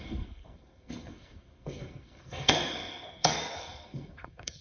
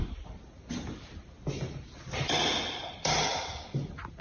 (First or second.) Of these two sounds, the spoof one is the first